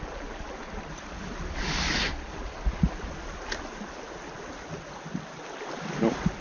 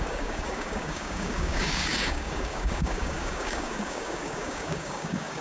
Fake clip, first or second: second